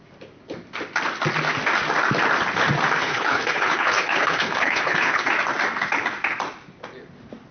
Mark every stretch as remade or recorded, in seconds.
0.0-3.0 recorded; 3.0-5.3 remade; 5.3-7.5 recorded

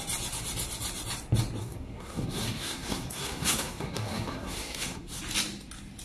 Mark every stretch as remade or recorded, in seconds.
0.0-1.6 recorded; 1.6-5.2 remade; 5.2-6.0 recorded

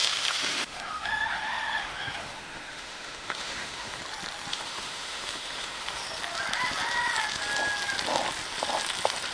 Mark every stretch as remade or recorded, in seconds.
0.0-4.0 remade; 4.0-4.5 recorded; 4.5-6.0 remade; 6.0-9.3 recorded

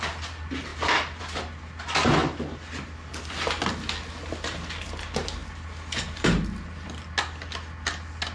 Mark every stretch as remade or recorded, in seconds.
0.0-8.3 recorded

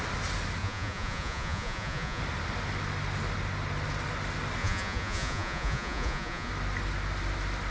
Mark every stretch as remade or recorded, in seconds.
0.0-0.6 recorded; 0.6-2.2 remade; 2.2-4.6 recorded; 4.6-6.5 remade; 6.5-7.7 recorded

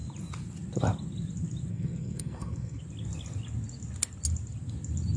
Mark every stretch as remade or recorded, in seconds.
0.0-1.7 recorded; 1.7-2.8 remade; 2.8-5.2 recorded

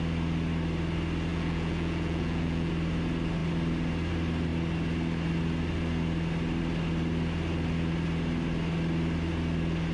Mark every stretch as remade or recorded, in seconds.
0.0-1.3 recorded; 1.3-2.7 remade; 2.7-9.9 recorded

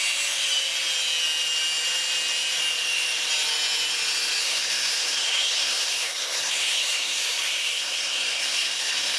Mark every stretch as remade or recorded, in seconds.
0.0-4.4 recorded; 4.4-9.2 remade